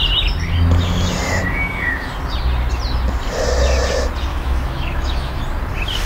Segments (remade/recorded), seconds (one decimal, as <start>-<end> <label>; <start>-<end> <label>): 0.0-1.4 recorded; 1.4-2.1 remade; 2.1-4.3 recorded; 4.3-5.4 remade; 5.4-6.1 recorded